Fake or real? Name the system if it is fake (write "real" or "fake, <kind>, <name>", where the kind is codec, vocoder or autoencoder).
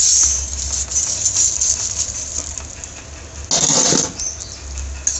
real